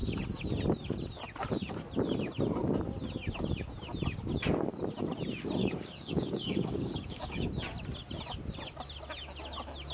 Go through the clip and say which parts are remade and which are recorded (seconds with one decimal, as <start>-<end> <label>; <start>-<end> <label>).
0.0-5.6 recorded; 5.6-7.5 remade; 7.5-9.9 recorded